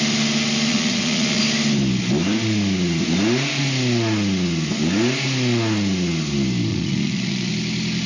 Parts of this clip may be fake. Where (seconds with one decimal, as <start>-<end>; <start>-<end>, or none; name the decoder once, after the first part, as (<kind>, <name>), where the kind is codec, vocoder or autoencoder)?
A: 0.7-1.4 (vocoder, Vocos); 6.7-7.5